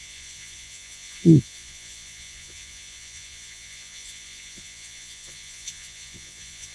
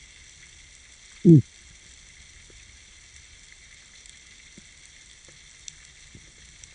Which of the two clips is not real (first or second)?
first